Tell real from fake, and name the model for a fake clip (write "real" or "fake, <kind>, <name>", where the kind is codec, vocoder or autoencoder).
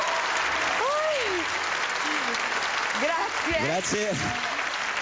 real